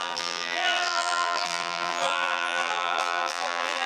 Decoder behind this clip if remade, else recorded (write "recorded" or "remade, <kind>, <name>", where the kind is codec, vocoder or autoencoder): remade, vocoder, BigVGAN v2